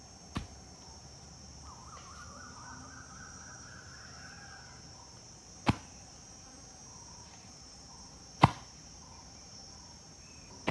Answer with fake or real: fake